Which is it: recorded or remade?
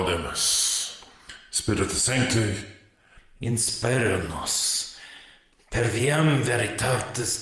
remade